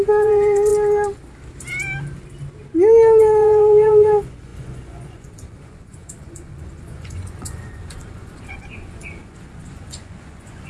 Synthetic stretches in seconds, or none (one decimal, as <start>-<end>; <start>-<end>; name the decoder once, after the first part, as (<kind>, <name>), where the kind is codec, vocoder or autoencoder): 0.0-0.7 (vocoder, Vocos); 3.2-10.7